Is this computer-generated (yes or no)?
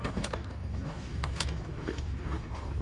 yes